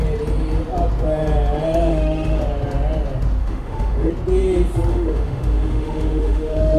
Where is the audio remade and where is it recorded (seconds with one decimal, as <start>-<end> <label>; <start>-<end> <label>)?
0.0-1.9 recorded; 1.9-2.4 remade; 2.4-3.4 recorded; 3.4-4.1 remade; 4.1-4.9 recorded; 4.9-6.8 remade